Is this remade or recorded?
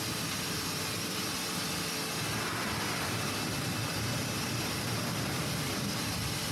remade